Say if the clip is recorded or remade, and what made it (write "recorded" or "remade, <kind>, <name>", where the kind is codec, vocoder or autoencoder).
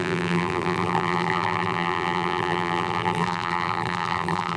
remade, vocoder, BigVGAN v2